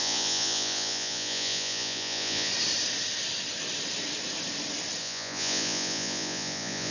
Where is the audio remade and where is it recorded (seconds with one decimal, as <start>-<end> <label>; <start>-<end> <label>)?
0.0-2.5 remade; 2.5-5.0 recorded; 5.0-6.9 remade